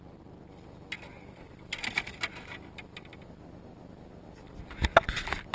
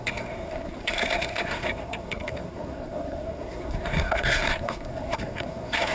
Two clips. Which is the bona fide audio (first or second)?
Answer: first